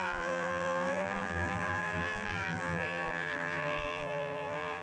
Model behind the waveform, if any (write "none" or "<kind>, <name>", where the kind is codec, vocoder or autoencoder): vocoder, BigVGAN v2